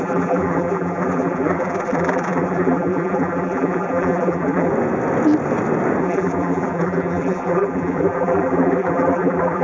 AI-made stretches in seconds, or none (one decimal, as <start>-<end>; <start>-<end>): 0.0-4.7; 6.0-9.6